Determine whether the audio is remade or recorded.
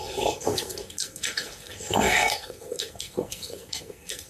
remade